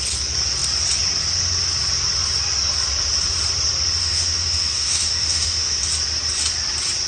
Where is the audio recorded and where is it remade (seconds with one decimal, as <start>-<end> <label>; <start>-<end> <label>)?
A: 0.0-4.0 recorded; 4.0-5.9 remade; 5.9-7.1 recorded

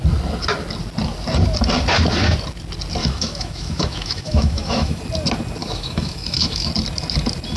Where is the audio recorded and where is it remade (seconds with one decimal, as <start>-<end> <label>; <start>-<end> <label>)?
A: 0.0-3.0 recorded; 3.0-5.0 remade; 5.0-5.6 recorded; 5.6-6.7 remade; 6.7-7.6 recorded

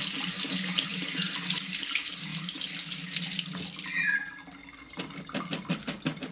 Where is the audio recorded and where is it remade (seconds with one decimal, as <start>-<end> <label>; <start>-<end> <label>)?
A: 0.0-6.3 recorded

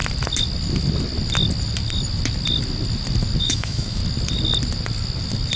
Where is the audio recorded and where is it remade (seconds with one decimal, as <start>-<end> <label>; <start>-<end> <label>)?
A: 0.0-3.4 recorded; 3.4-4.0 remade; 4.0-5.6 recorded

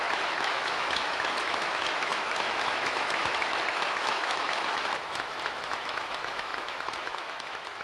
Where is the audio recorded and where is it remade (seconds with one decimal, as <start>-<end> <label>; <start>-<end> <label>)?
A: 0.0-7.8 remade

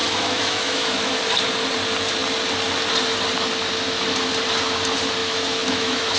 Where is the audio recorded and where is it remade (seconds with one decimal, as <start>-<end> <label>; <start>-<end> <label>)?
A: 0.0-1.2 remade; 1.2-5.2 recorded; 5.2-6.2 remade